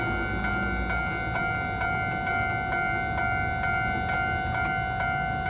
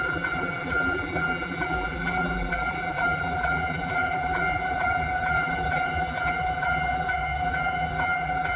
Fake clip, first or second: second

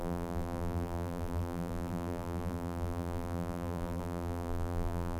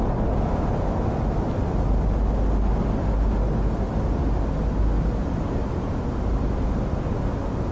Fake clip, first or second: first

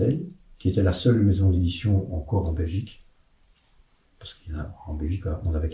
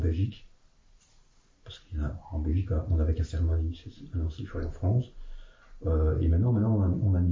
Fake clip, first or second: first